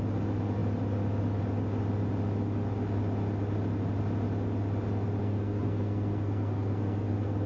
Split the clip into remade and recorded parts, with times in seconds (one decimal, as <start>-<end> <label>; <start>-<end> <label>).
0.0-5.2 recorded; 5.2-7.5 remade